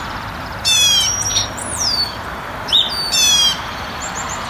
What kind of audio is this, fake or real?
fake